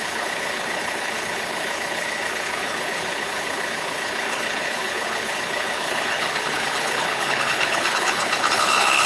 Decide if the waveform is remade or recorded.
remade